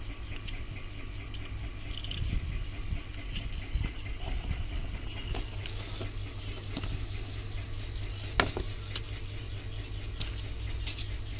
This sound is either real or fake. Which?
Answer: real